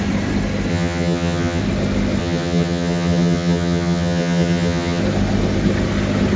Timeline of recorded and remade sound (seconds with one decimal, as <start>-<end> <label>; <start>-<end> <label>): 0.0-0.7 recorded; 0.7-1.6 remade; 1.6-2.2 recorded; 2.2-5.0 remade; 5.0-6.4 recorded